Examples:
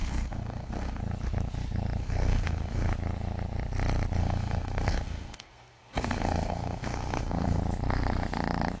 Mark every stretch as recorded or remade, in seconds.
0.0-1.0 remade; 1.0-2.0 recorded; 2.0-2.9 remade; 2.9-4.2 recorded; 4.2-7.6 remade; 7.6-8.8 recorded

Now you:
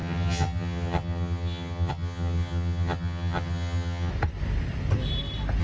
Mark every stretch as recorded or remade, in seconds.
0.0-4.1 remade; 4.1-5.6 recorded